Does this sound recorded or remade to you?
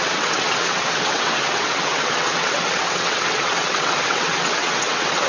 remade